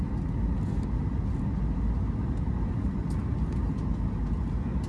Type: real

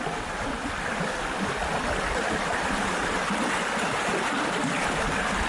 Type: real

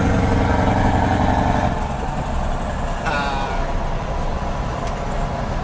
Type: real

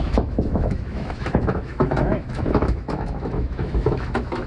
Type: fake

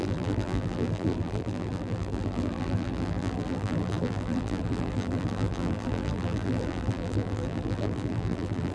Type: fake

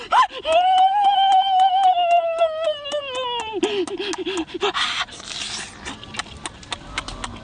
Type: real